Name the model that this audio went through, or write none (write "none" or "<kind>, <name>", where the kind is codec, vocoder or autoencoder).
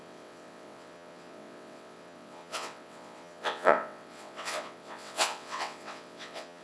vocoder, WaveNeXt